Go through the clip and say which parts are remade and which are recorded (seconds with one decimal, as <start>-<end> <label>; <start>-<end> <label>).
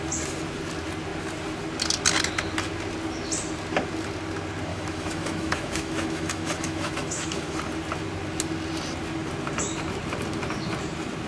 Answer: 0.0-4.7 recorded; 4.7-7.6 remade; 7.6-11.3 recorded